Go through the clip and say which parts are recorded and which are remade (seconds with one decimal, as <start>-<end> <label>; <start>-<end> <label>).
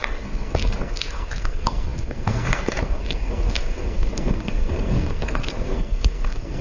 0.0-6.6 remade